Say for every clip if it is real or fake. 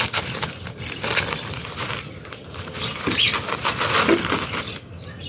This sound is real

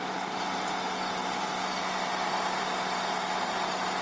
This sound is real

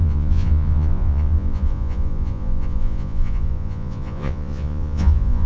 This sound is fake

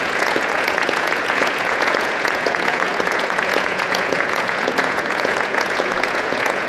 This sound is fake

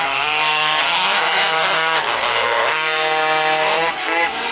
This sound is fake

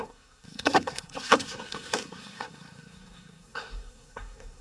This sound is fake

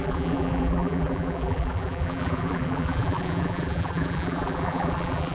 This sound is fake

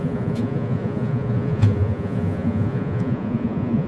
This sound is fake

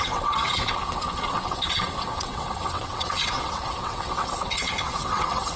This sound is fake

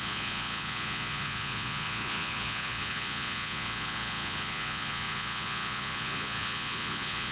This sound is fake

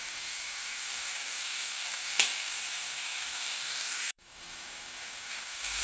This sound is fake